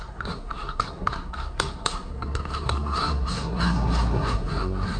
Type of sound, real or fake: fake